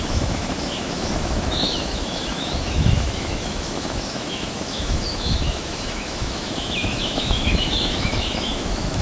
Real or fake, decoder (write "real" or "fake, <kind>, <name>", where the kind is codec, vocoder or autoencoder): fake, autoencoder, DAC-VAE